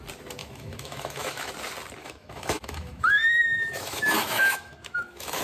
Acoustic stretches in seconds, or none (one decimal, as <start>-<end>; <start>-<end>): 0.0-0.4; 1.5-2.0